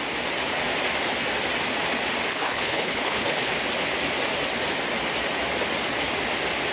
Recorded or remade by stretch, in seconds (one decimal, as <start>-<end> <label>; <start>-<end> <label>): 0.0-2.3 recorded; 2.3-3.5 remade; 3.5-6.7 recorded